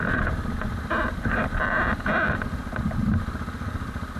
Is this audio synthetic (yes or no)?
no